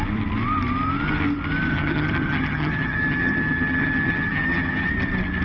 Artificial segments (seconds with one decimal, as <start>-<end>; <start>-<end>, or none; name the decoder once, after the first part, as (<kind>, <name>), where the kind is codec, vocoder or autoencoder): 1.7-4.9 (vocoder, HiFi-GAN)